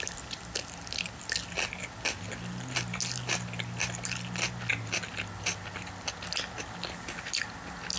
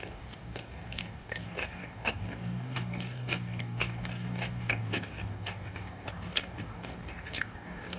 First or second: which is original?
first